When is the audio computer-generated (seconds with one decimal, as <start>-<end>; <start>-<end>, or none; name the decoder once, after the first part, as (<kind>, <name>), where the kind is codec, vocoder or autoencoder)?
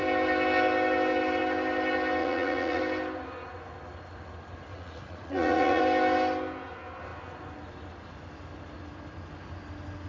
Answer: 2.2-2.8 (vocoder, Vocos); 4.7-5.8